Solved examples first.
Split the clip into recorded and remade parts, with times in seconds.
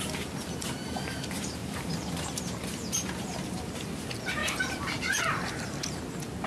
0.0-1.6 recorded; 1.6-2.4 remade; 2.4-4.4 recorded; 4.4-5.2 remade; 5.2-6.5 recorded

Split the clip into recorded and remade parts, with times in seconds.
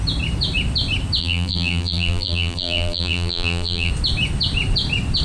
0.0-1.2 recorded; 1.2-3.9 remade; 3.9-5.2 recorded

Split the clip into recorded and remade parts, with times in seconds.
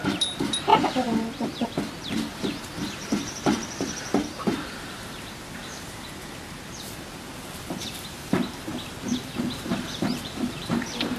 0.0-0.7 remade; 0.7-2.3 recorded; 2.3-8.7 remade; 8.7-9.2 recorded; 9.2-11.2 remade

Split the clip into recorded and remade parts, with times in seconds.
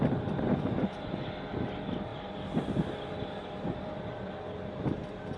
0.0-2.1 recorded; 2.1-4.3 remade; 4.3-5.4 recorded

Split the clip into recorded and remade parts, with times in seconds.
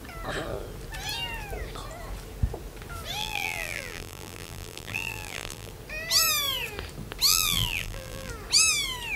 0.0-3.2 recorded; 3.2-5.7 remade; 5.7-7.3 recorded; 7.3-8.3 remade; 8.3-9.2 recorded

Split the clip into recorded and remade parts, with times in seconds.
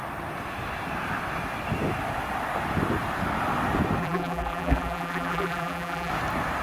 0.0-4.0 recorded; 4.0-6.1 remade; 6.1-6.6 recorded